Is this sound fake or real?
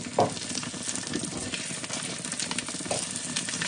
real